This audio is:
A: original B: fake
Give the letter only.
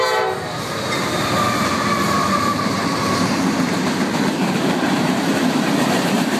B